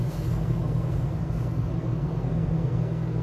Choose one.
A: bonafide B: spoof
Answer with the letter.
B